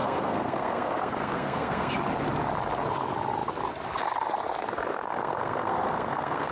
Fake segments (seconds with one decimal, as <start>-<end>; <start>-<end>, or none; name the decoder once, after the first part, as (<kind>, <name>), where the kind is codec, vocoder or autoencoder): 0.0-1.9 (codec, SNAC); 4.9-6.5